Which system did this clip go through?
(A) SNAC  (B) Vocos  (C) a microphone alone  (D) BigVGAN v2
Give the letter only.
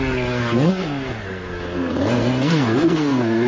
A